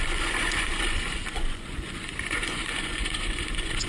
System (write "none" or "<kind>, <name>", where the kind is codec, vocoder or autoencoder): vocoder, Vocos